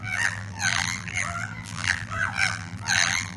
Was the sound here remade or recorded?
remade